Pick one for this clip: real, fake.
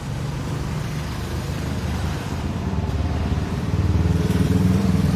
fake